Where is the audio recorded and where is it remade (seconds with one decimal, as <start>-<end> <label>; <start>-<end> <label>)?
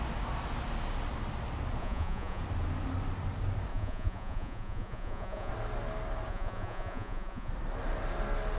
0.0-1.8 recorded; 1.8-2.4 remade; 2.4-3.7 recorded; 3.7-5.5 remade; 5.5-6.3 recorded; 6.3-7.5 remade; 7.5-8.6 recorded